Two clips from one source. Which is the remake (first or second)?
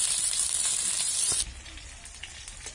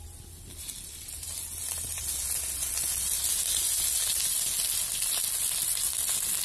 first